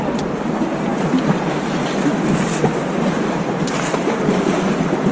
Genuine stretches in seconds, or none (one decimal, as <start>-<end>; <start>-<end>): 0.0-5.1